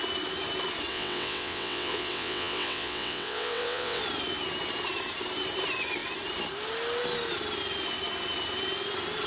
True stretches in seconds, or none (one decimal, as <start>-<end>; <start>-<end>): 0.0-0.9; 4.0-9.3